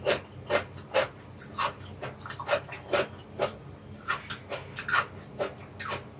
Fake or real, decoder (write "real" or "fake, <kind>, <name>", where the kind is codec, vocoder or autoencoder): real